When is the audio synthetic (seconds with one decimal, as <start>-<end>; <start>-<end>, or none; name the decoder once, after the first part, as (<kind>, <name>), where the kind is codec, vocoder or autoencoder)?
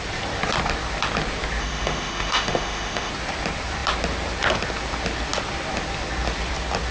1.6-3.1 (autoencoder, DAC-VAE)